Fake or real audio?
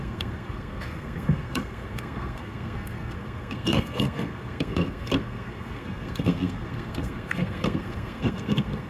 fake